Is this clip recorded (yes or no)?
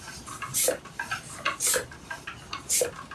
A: yes